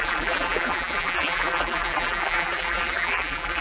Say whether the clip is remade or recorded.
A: remade